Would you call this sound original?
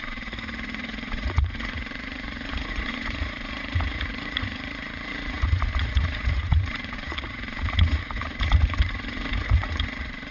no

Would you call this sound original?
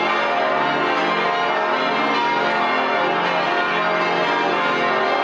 yes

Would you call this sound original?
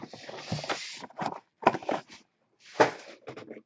yes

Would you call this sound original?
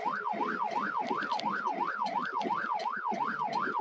yes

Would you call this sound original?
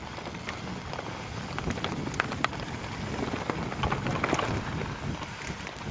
yes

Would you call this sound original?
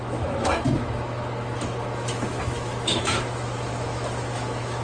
no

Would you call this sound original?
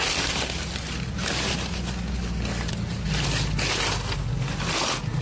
yes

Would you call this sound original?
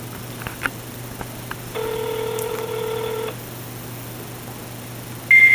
yes